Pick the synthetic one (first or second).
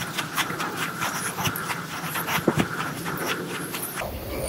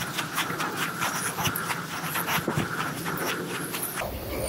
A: first